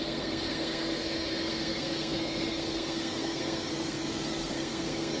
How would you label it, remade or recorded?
remade